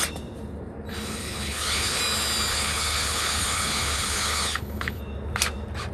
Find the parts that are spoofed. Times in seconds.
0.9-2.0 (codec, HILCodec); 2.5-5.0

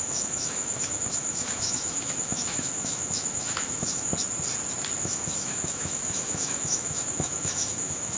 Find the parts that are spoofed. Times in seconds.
0.0-4.1 (autoencoder, DAC-VAE); 5.0-8.2

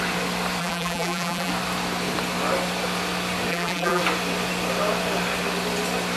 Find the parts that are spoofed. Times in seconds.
0.6-1.5 (vocoder, BigVGAN v2); 3.5-4.0

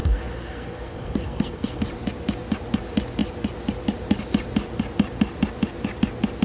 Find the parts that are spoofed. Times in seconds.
0.0-1.8 (codec, SNAC)

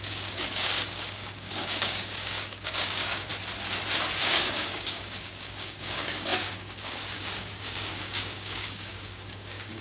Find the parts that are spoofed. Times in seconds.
0.0-3.3 (codec, DAC); 4.2-9.8

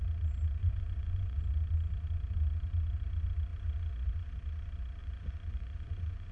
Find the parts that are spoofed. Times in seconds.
0.6-1.4 (vocoder, Vocos); 5.0-6.3